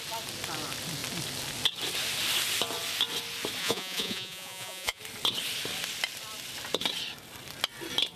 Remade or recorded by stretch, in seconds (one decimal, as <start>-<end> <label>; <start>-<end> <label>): 0.0-3.6 recorded; 3.6-5.0 remade; 5.0-8.2 recorded